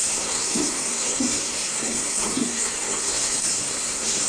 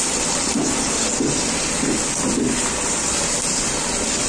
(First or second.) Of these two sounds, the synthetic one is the first